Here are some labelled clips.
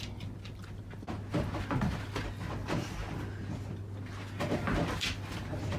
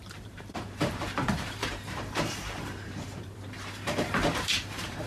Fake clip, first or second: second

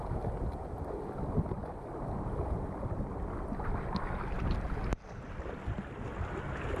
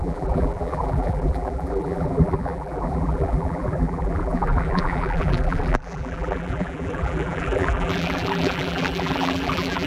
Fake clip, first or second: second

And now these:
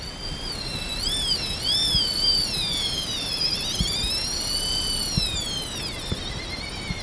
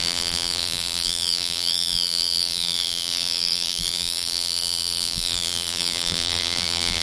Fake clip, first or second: second